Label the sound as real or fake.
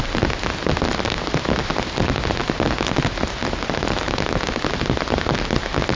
real